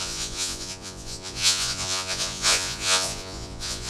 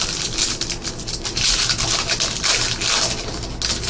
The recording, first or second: second